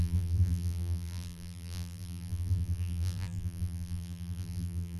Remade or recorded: remade